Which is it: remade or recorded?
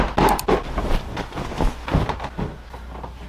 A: recorded